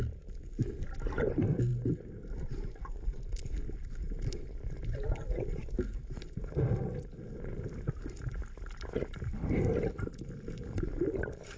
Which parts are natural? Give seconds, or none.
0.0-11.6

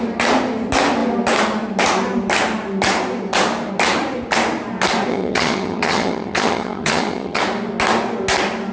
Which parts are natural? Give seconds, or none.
0.0-5.1; 7.4-8.7

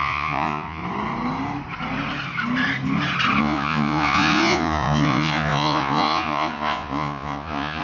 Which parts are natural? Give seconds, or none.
0.8-3.4

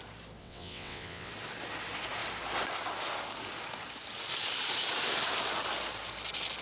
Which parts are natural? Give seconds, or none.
0.0-0.4; 1.3-6.6

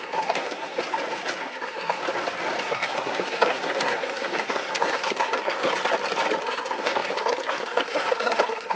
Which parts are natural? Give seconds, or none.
0.8-1.4; 2.0-2.6; 5.7-6.4